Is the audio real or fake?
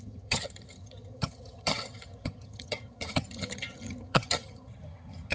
fake